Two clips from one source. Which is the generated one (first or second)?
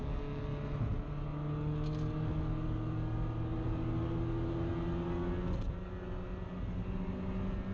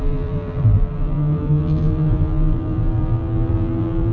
second